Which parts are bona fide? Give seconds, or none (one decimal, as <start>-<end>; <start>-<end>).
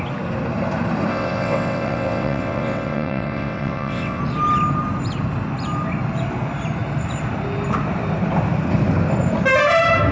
0.0-1.1; 4.2-10.1